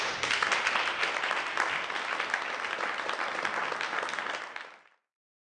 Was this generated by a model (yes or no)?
no